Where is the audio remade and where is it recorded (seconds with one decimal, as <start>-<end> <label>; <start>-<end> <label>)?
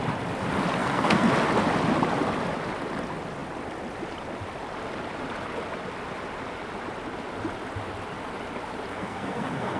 0.0-0.8 recorded; 0.8-1.3 remade; 1.3-8.9 recorded; 8.9-9.8 remade